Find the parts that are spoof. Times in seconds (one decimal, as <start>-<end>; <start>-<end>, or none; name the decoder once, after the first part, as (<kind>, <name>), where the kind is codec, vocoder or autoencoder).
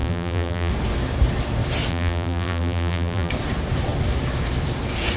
0.0-0.7 (vocoder, BigVGAN v2); 1.9-3.3